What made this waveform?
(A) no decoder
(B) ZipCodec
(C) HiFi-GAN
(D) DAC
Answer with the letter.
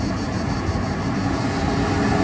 A